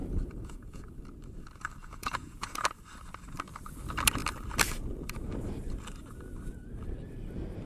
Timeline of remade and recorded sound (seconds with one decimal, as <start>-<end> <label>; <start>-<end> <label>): 0.0-1.0 remade; 1.0-1.8 recorded; 1.8-2.5 remade; 2.5-7.7 recorded